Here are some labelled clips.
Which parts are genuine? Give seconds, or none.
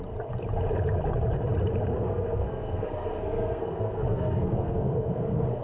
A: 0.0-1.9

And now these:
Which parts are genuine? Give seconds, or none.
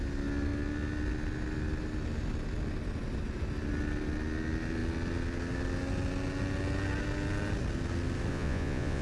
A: 0.0-8.3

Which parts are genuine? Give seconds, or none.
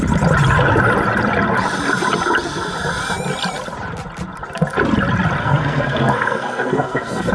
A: 0.0-5.4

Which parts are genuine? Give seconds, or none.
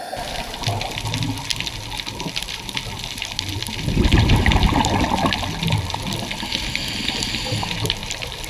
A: 0.0-8.0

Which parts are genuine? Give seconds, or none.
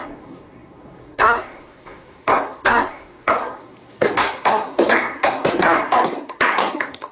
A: none